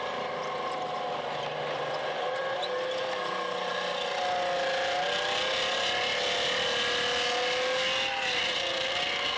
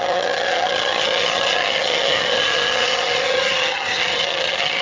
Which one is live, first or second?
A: first